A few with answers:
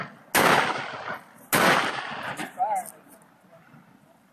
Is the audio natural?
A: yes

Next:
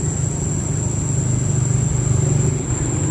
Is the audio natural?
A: yes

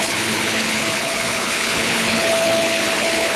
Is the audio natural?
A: no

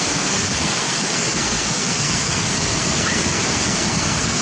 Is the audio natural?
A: no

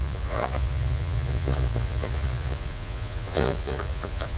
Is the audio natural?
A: no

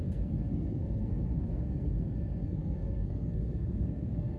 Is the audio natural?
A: no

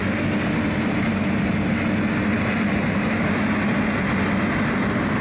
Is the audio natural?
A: yes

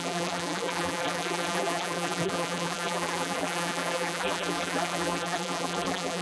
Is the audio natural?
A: no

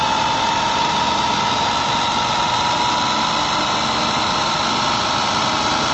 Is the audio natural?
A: yes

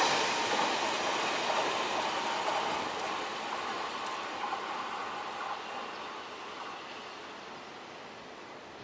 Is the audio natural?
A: yes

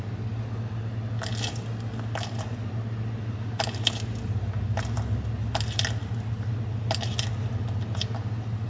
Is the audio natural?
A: yes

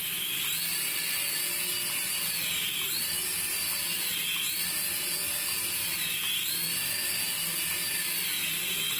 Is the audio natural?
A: yes